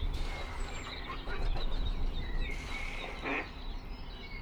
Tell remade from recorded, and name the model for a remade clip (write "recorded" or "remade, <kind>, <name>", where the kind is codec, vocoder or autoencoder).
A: remade, vocoder, BigVGAN v2